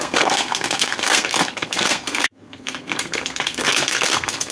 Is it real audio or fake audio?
fake